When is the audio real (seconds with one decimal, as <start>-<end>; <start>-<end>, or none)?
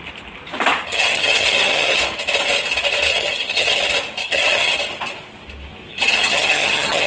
0.0-0.9; 2.0-3.1; 3.8-4.2; 4.8-5.9